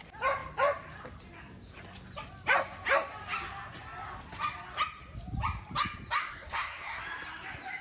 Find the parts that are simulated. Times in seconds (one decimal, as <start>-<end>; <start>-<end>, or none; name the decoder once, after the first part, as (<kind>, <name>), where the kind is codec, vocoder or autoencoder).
6.2-7.0 (codec, SNAC)